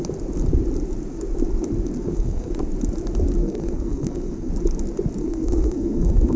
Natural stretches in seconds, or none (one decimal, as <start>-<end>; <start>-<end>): 0.0-2.0; 2.5-3.4; 4.5-5.2